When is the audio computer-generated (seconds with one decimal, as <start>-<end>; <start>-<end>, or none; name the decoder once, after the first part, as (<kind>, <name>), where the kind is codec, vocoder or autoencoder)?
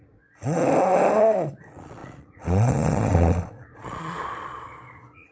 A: 0.0-0.6 (vocoder, Vocos); 1.2-5.3